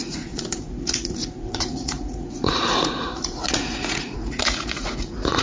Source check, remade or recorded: remade